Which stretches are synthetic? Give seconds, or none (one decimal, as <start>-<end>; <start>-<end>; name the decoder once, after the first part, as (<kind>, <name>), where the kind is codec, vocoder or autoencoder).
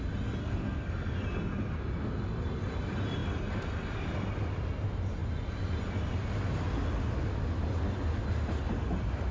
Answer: 0.4-0.9 (codec, SNAC)